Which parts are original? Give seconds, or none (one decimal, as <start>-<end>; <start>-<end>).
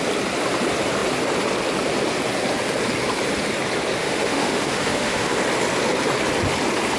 0.0-4.0; 5.3-7.0